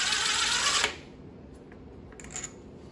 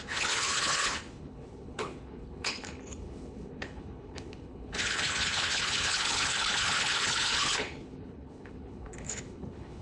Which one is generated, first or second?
second